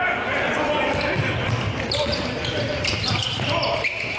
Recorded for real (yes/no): yes